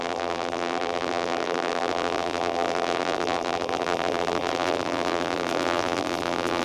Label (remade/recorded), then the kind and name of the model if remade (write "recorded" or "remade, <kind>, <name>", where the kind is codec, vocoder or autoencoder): remade, vocoder, BigVGAN v2